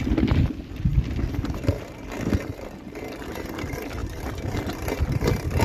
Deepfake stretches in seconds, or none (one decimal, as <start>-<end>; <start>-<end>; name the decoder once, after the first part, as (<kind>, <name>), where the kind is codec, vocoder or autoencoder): none

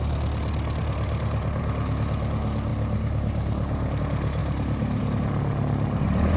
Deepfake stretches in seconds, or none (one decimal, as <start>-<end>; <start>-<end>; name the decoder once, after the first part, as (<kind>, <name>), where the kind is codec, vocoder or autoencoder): 0.8-1.6 (vocoder, BigVGAN v2); 2.7-4.0; 4.4-5.0

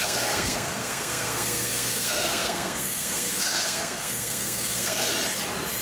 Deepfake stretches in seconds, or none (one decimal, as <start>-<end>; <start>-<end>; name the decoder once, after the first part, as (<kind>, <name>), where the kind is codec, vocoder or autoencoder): 0.0-5.1 (codec, SNAC)

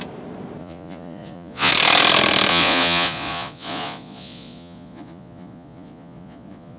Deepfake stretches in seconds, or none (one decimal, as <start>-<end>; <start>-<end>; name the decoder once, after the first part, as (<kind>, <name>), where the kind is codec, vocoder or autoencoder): 0.6-1.7 (vocoder, Vocos); 2.5-6.8

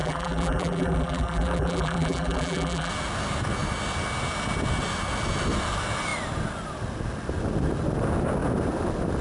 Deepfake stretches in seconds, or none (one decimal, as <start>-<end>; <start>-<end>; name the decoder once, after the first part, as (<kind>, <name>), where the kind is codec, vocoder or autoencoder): 0.0-2.9 (vocoder, BigVGAN v2)

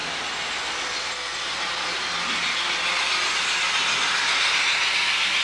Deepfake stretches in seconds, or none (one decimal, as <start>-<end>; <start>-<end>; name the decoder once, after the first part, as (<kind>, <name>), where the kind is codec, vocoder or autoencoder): none

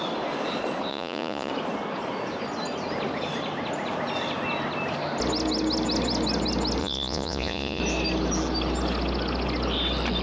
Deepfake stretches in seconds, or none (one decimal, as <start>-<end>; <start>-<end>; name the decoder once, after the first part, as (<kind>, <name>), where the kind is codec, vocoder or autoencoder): 0.9-1.5 (vocoder, Vocos); 6.8-7.8